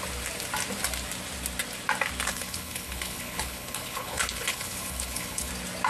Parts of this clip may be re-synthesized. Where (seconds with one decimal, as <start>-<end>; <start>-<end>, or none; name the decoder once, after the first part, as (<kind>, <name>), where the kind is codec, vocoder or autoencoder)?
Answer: 2.3-5.5 (codec, HILCodec)